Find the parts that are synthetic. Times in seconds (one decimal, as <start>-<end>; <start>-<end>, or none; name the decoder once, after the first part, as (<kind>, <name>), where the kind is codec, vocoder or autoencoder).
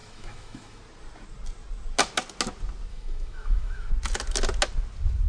0.0-0.8 (autoencoder, DAC-VAE); 2.9-3.9